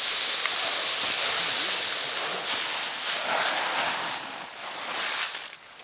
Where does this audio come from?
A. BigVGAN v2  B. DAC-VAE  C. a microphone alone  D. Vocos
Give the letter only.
C